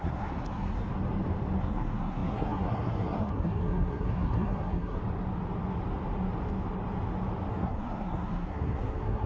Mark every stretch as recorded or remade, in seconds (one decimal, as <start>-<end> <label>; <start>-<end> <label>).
0.0-0.9 remade; 0.9-1.6 recorded; 1.6-5.0 remade; 5.0-7.5 recorded; 7.5-9.3 remade